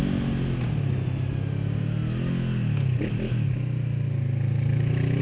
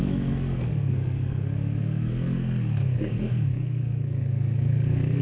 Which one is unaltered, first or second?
first